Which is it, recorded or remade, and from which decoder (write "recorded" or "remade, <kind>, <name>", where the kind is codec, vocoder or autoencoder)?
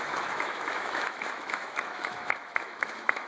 remade, autoencoder, DAC-VAE